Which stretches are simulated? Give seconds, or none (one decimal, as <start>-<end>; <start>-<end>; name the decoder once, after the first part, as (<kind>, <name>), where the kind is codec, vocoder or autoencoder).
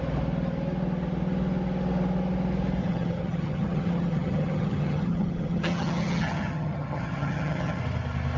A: 2.8-7.8 (vocoder, HiFi-GAN)